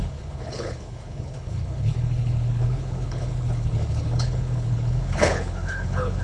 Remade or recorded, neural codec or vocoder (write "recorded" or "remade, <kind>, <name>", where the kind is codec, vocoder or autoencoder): remade, codec, HILCodec